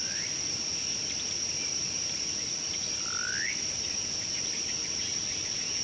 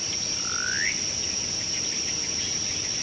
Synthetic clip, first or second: first